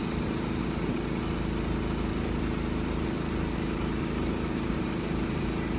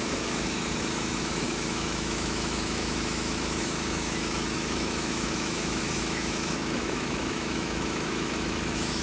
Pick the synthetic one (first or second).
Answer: second